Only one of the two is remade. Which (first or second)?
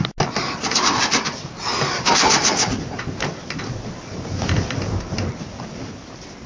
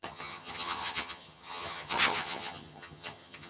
second